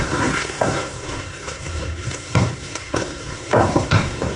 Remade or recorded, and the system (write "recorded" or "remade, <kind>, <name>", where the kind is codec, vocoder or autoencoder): remade, codec, SNAC